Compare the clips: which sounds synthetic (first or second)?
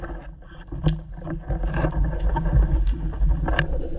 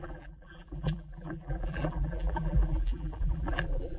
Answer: second